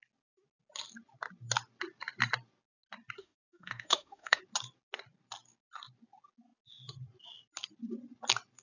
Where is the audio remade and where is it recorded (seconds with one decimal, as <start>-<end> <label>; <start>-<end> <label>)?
0.0-3.2 recorded; 3.2-4.4 remade; 4.4-8.6 recorded